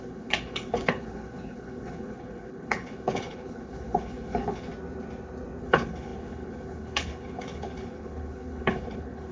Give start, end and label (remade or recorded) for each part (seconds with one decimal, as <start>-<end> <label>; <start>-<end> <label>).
0.0-4.7 remade; 4.7-5.6 recorded; 5.6-9.3 remade